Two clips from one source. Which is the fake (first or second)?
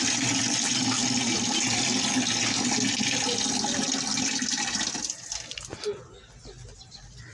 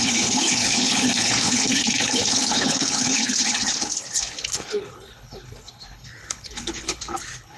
second